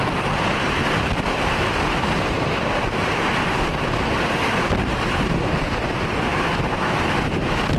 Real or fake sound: real